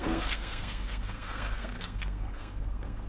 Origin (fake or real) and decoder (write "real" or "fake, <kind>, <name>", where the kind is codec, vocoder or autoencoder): fake, codec, SNAC